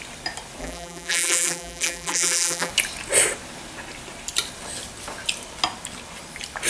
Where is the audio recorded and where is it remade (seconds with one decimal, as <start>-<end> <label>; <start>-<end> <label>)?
0.0-0.6 recorded; 0.6-2.7 remade; 2.7-6.7 recorded